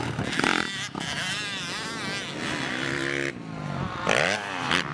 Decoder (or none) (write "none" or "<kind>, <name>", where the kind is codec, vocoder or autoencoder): none